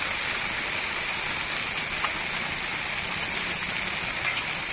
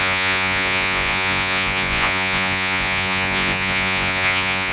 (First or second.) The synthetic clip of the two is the second